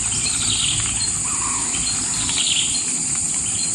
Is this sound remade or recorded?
recorded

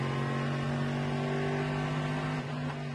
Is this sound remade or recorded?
recorded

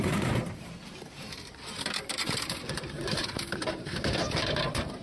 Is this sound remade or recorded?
remade